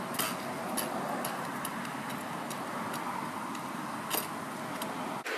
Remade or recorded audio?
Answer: recorded